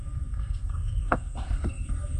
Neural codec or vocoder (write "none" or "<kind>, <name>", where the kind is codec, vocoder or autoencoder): codec, SNAC